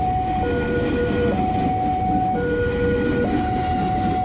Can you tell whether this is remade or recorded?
recorded